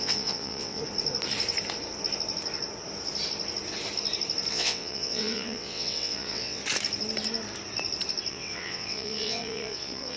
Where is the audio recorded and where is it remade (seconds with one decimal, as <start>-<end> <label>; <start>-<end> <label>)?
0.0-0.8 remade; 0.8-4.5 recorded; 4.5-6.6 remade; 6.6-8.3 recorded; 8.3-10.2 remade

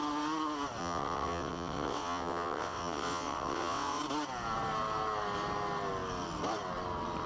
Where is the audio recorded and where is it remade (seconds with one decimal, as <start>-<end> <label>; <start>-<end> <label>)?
0.0-0.8 recorded; 0.8-4.0 remade; 4.0-7.3 recorded

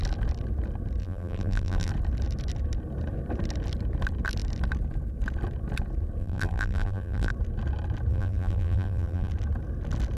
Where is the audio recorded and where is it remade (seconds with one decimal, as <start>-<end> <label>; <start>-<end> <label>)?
0.0-1.0 recorded; 1.0-1.9 remade; 1.9-6.2 recorded; 6.2-7.3 remade; 7.3-8.1 recorded; 8.1-9.3 remade; 9.3-10.2 recorded

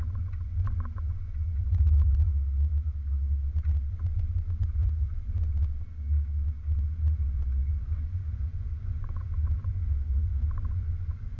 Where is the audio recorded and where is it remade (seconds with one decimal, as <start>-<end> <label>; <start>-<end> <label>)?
0.0-2.3 remade; 2.3-3.9 recorded; 3.9-5.5 remade; 5.5-7.7 recorded; 7.7-11.4 remade

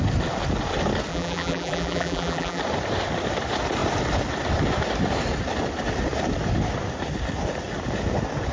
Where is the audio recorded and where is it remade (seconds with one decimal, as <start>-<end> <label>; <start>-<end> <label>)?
0.0-1.1 recorded; 1.1-2.6 remade; 2.6-8.5 recorded

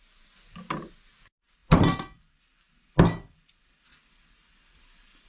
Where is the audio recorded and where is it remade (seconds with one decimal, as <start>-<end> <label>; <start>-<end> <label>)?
0.0-5.3 recorded

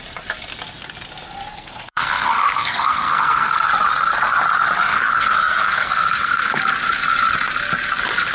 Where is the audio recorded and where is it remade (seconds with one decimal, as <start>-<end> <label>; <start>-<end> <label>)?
0.0-1.5 recorded; 1.5-3.7 remade; 3.7-4.9 recorded; 4.9-6.6 remade; 6.6-8.3 recorded

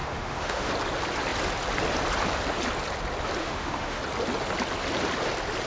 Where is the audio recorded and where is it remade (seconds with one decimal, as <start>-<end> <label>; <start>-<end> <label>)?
0.0-0.7 remade; 0.7-3.4 recorded; 3.4-4.0 remade; 4.0-5.7 recorded